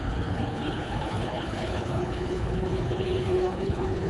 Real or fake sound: fake